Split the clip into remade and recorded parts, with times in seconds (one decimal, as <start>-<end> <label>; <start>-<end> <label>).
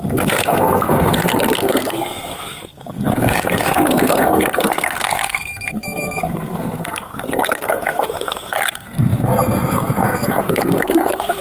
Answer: 0.0-11.4 remade